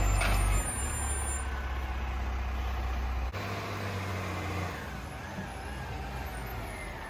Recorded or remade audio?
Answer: recorded